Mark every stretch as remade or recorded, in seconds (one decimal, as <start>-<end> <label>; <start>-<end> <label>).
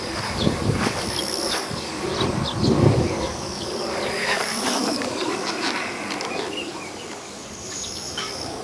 0.0-2.1 remade; 2.1-2.8 recorded; 2.8-8.6 remade